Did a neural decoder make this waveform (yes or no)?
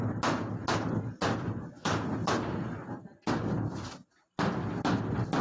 no